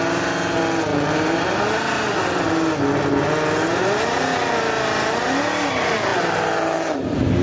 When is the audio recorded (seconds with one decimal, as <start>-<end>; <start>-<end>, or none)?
0.0-0.9; 2.5-7.4